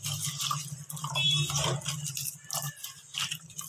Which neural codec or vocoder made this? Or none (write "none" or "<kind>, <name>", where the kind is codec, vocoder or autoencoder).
none